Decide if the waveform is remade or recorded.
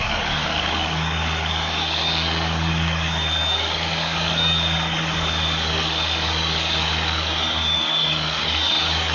remade